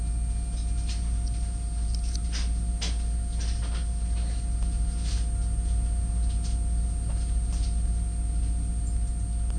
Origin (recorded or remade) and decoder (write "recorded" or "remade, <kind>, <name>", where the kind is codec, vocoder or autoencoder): recorded